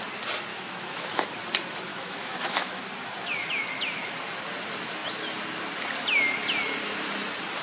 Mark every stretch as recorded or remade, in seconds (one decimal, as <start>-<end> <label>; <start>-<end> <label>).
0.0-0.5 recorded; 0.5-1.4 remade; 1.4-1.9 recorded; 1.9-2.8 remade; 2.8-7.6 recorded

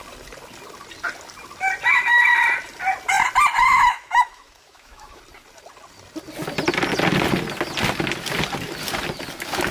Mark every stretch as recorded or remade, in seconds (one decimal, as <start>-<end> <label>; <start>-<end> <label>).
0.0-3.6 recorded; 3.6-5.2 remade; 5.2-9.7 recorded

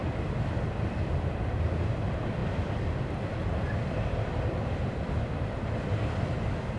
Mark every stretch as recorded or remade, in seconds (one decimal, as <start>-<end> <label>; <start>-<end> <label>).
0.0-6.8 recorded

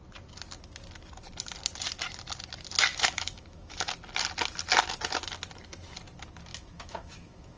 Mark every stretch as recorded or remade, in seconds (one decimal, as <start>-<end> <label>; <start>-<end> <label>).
0.0-2.9 recorded; 2.9-3.9 remade; 3.9-6.5 recorded; 6.5-7.6 remade

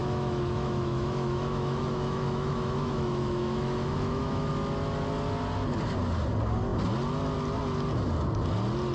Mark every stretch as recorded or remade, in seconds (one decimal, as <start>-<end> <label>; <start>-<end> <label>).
0.0-4.5 remade; 4.5-8.9 recorded

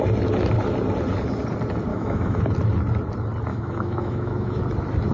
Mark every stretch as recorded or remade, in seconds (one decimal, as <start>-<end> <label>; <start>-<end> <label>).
0.0-1.9 recorded; 1.9-2.4 remade; 2.4-3.5 recorded; 3.5-4.6 remade; 4.6-5.1 recorded